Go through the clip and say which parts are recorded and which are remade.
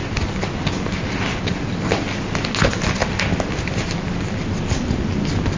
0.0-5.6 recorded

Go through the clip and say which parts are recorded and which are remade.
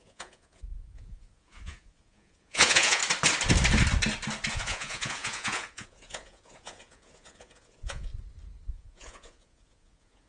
0.0-3.0 remade; 3.0-4.5 recorded; 4.5-8.1 remade; 8.1-8.7 recorded; 8.7-10.3 remade